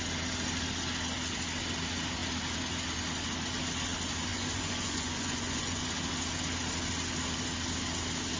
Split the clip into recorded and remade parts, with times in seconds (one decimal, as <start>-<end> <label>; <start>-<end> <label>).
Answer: 0.0-4.3 recorded; 4.3-5.9 remade; 5.9-8.4 recorded